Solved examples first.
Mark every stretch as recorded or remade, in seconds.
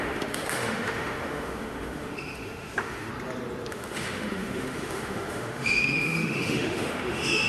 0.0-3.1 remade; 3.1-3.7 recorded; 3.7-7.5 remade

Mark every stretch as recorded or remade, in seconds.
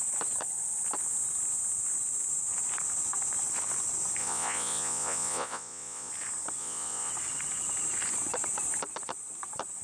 0.0-4.2 recorded; 4.2-6.1 remade; 6.1-6.6 recorded; 6.6-7.1 remade; 7.1-9.8 recorded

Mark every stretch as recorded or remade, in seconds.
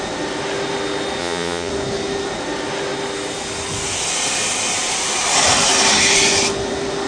0.0-1.2 recorded; 1.2-1.7 remade; 1.7-7.1 recorded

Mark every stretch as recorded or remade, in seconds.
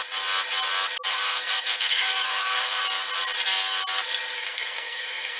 0.0-1.1 recorded; 1.1-2.8 remade; 2.8-4.4 recorded; 4.4-5.4 remade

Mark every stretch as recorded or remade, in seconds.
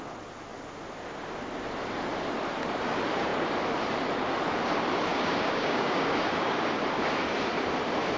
0.0-5.1 recorded; 5.1-6.7 remade; 6.7-8.2 recorded